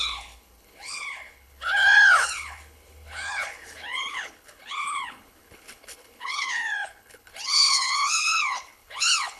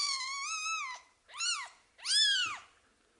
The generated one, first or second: first